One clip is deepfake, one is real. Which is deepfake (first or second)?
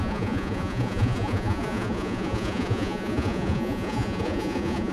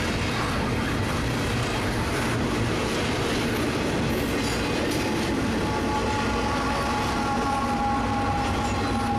first